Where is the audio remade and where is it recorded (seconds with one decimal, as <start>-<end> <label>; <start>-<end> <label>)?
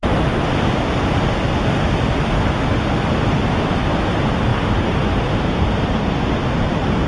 0.0-4.5 recorded; 4.5-7.1 remade